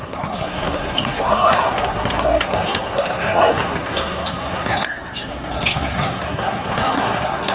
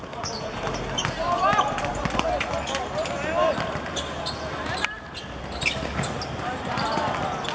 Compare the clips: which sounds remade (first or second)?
first